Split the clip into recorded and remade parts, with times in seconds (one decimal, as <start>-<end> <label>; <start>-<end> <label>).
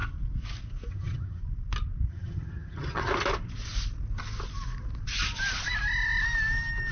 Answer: 0.0-0.9 recorded; 0.9-1.4 remade; 1.4-2.1 recorded; 2.1-3.1 remade; 3.1-6.9 recorded